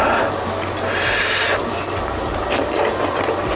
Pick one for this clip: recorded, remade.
remade